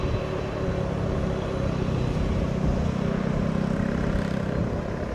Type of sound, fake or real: real